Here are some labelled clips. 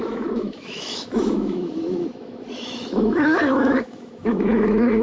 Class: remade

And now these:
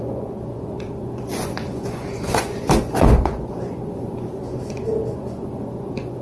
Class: remade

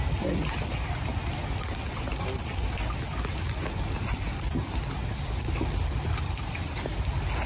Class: recorded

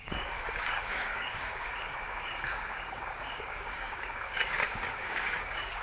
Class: remade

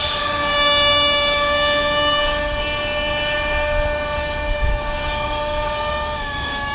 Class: remade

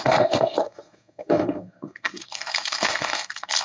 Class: remade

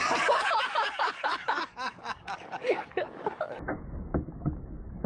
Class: remade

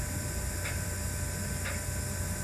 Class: recorded